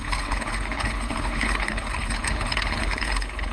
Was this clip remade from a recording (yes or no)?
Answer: yes